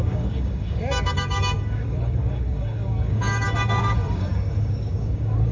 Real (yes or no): no